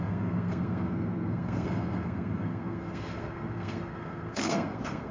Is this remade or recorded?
remade